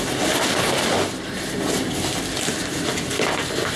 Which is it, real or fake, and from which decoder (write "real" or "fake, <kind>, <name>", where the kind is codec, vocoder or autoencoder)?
real